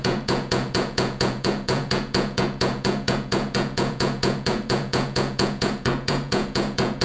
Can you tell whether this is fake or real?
fake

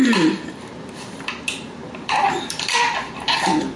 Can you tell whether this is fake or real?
real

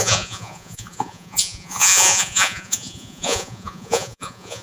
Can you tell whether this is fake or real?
fake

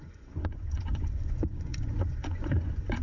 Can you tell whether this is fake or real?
fake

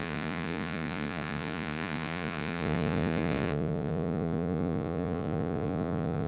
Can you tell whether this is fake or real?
fake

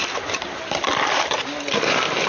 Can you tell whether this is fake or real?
real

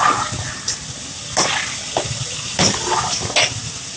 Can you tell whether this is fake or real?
real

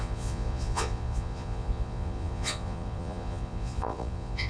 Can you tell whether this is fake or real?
fake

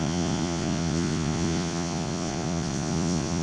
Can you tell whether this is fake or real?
fake